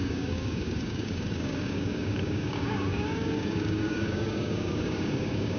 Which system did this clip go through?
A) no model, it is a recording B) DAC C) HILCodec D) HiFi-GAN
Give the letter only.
B